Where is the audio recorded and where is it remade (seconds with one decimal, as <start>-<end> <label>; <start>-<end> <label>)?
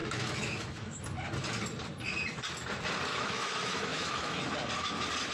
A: 0.0-1.0 remade; 1.0-3.1 recorded; 3.1-4.4 remade; 4.4-5.3 recorded